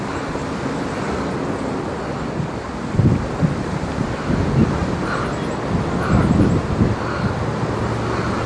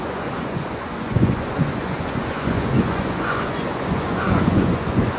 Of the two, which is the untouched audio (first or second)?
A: first